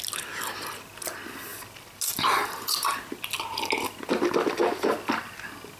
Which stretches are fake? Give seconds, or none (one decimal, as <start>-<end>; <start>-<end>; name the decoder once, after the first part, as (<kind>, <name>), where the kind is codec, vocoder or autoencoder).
none